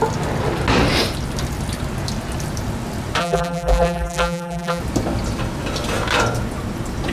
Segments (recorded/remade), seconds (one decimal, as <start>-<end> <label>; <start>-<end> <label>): 0.0-3.2 recorded; 3.2-4.8 remade; 4.8-7.1 recorded